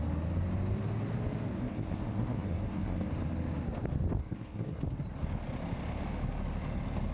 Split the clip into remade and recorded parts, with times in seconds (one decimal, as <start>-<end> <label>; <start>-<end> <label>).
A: 0.0-1.6 recorded; 1.6-3.1 remade; 3.1-4.2 recorded; 4.2-4.8 remade; 4.8-7.1 recorded